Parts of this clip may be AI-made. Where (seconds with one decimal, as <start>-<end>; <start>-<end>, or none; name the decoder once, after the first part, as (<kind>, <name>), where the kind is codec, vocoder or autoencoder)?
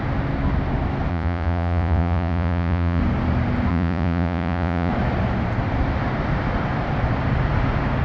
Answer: 1.1-3.0 (vocoder, Vocos); 3.7-4.9